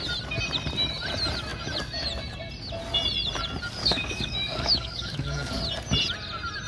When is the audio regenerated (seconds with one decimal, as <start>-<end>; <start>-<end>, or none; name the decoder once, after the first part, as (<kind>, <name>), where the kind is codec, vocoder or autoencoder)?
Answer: 3.8-5.6 (codec, DAC)